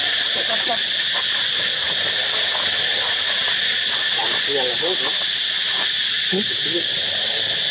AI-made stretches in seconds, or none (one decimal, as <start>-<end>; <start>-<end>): none